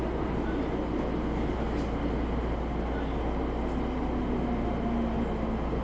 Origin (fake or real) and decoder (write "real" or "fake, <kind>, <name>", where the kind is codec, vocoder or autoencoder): real